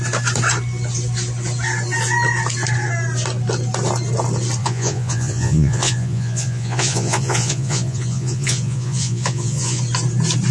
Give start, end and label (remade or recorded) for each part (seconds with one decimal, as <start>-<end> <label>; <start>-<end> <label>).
0.0-4.6 recorded; 4.6-9.8 remade; 9.8-10.5 recorded